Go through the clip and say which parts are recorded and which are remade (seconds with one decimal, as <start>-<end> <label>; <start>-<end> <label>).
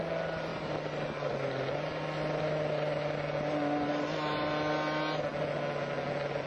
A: 0.0-6.5 recorded